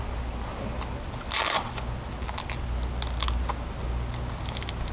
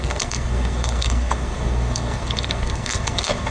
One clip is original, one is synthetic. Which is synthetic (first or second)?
second